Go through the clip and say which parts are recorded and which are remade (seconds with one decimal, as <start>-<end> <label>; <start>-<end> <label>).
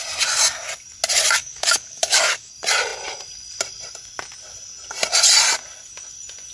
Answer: 0.0-1.4 recorded; 1.4-2.5 remade; 2.5-6.5 recorded